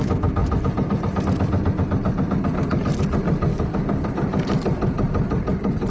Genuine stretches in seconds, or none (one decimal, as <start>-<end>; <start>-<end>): 0.0-3.5; 4.1-5.9